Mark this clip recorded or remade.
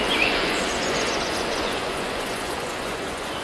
remade